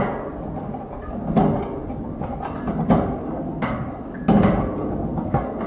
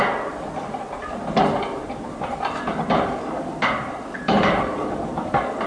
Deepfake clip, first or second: second